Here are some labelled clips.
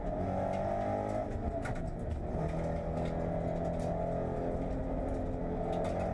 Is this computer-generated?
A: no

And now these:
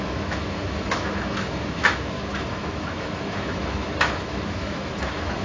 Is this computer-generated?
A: yes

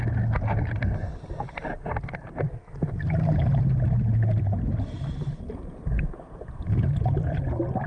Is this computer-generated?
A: no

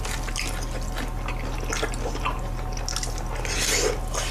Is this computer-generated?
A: no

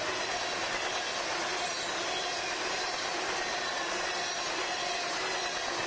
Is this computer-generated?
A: no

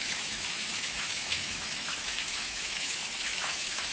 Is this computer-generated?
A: yes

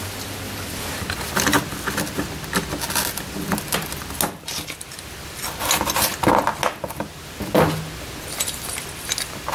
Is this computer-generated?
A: no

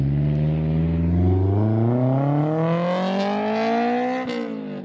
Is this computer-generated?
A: no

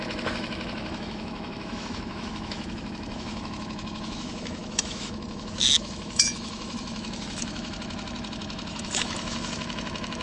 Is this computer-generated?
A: yes